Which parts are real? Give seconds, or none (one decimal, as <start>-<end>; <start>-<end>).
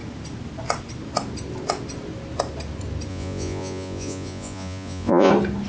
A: 0.0-3.1; 5.3-5.7